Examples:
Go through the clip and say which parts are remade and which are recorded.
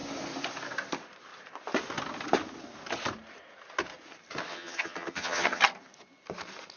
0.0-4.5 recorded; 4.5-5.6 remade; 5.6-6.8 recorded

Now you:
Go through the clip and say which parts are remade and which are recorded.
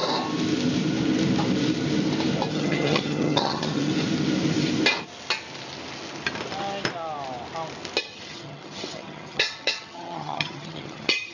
0.0-2.5 recorded; 2.5-3.9 remade; 3.9-8.0 recorded; 8.0-11.3 remade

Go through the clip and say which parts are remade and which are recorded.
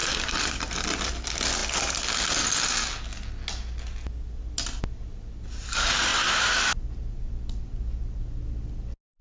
0.0-9.2 recorded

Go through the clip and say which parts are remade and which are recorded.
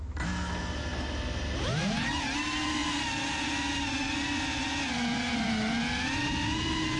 0.0-7.0 recorded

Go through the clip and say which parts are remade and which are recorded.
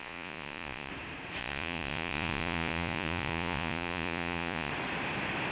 0.0-0.9 remade; 0.9-1.4 recorded; 1.4-4.7 remade; 4.7-5.5 recorded